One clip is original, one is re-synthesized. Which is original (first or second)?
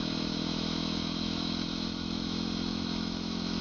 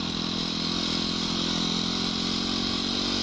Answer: second